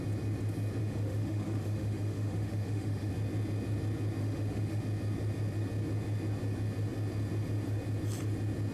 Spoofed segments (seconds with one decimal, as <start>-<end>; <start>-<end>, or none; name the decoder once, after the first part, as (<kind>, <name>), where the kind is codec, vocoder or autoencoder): 0.8-3.1 (autoencoder, DAC-VAE); 4.2-4.8